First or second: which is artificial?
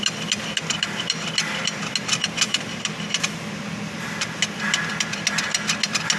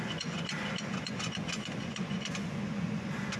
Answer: second